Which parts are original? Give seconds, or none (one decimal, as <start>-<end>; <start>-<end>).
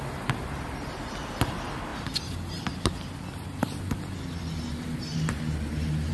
0.0-5.1